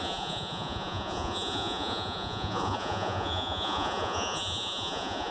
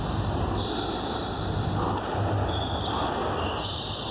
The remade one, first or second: first